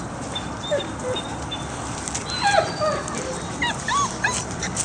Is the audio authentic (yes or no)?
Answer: yes